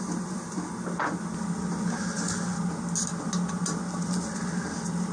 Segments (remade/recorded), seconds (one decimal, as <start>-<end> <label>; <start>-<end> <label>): 0.0-5.1 recorded